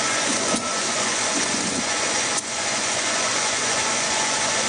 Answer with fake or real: fake